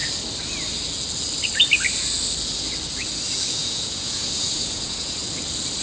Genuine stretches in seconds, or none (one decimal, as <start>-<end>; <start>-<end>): 0.0-3.5; 5.2-5.8